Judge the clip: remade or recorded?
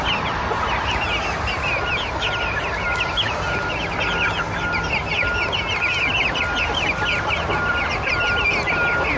recorded